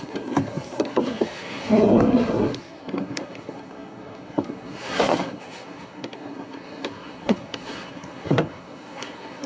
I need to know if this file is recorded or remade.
remade